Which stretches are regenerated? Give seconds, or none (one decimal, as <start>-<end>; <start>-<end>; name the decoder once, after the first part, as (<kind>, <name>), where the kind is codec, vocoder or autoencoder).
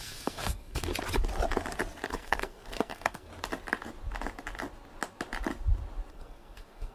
0.0-0.9 (codec, SNAC); 2.1-3.3; 6.1-6.9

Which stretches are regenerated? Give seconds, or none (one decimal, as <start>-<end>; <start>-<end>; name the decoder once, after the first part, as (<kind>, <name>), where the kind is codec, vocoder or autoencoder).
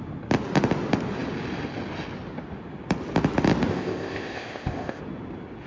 3.7-5.0 (codec, ZipCodec)